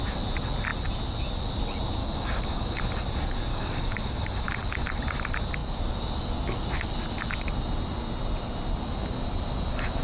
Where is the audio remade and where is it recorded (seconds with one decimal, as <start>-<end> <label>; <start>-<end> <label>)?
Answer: 0.0-2.0 recorded; 2.0-2.8 remade; 2.8-3.5 recorded; 3.5-4.4 remade; 4.4-10.0 recorded